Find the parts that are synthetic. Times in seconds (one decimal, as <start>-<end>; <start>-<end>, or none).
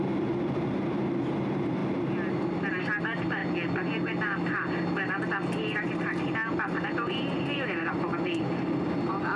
none